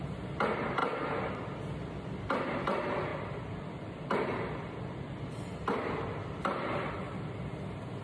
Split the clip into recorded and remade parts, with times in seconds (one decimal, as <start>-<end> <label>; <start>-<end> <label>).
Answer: 0.0-3.1 recorded; 3.1-6.9 remade; 6.9-8.0 recorded